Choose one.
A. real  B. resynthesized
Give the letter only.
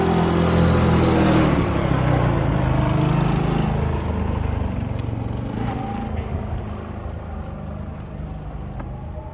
A